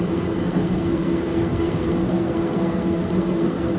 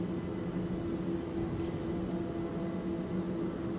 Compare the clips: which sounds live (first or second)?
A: second